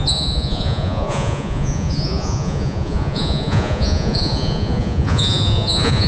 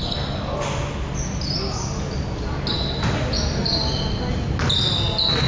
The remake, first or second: first